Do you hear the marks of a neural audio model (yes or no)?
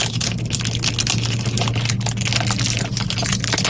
no